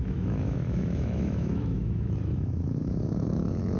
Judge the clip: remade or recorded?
remade